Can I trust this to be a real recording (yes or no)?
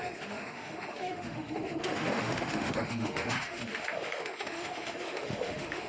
no